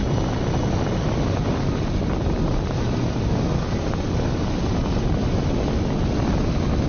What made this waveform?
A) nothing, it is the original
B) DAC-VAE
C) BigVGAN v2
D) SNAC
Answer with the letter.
A